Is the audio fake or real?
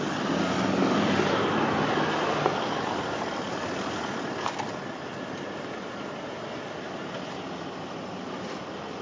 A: real